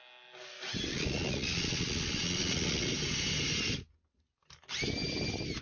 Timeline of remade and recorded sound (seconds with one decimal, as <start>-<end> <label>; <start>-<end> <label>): 0.0-0.9 recorded; 0.9-2.9 remade; 2.9-5.6 recorded